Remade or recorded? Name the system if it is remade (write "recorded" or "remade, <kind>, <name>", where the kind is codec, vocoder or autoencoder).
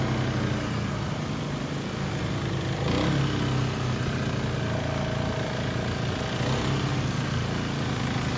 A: recorded